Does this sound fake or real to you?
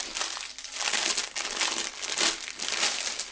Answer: real